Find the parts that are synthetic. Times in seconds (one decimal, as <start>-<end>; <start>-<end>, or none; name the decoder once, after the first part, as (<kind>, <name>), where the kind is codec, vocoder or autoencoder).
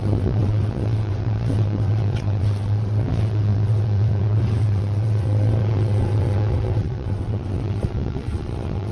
0.0-8.9 (vocoder, WaveNeXt)